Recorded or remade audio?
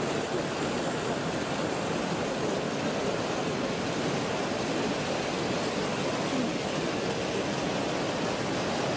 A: recorded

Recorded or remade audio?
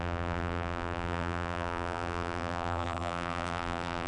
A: remade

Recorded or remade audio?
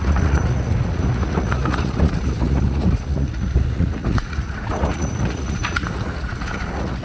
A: remade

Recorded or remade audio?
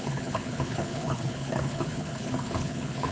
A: remade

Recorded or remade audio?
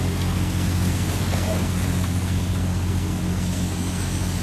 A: remade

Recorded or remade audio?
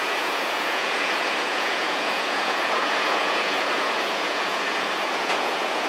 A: remade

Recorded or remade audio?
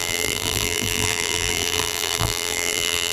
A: remade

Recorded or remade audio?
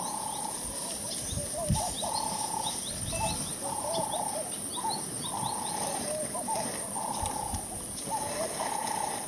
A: recorded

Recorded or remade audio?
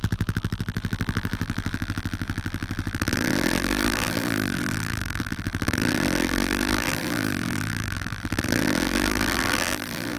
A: remade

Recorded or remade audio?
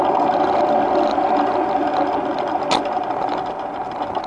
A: recorded